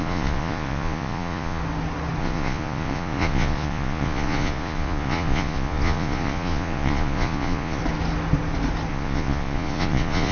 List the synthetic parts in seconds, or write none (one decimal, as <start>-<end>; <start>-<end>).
0.0-1.6; 2.2-7.8; 8.9-10.3